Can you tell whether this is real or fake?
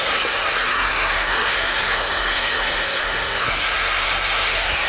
fake